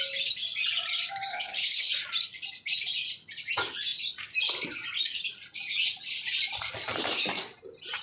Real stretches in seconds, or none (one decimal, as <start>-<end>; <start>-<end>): 0.0-1.3; 1.9-8.0